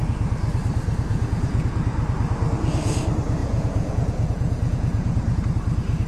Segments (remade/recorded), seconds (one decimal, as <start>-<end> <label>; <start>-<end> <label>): 0.0-1.1 recorded; 1.1-1.8 remade; 1.8-3.4 recorded; 3.4-5.4 remade; 5.4-6.1 recorded